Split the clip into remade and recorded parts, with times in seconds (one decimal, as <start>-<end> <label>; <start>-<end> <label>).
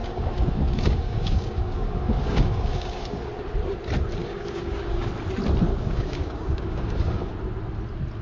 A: 0.0-3.3 remade; 3.3-4.2 recorded; 4.2-5.1 remade; 5.1-5.7 recorded; 5.7-7.3 remade; 7.3-8.2 recorded